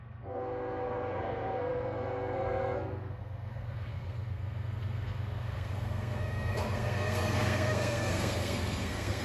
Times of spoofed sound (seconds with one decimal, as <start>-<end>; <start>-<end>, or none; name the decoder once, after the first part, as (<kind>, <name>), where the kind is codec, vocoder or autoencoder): 0.0-9.2 (codec, SNAC)